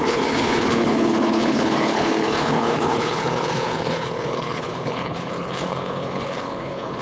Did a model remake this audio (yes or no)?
yes